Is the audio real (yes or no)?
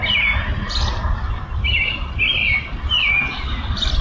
yes